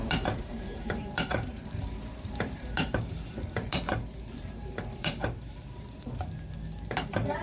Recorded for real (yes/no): no